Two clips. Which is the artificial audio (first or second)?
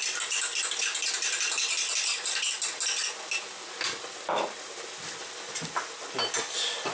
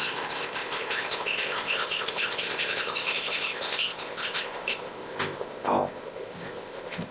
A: second